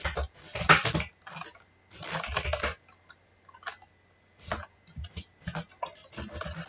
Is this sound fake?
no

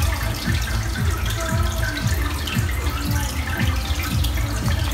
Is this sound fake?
no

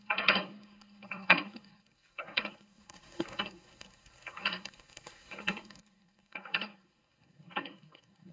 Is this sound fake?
yes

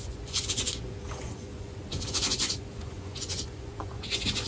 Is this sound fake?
yes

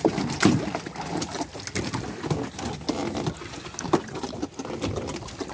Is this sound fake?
no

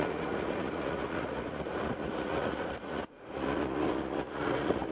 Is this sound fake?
yes